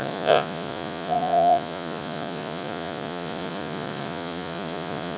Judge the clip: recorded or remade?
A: remade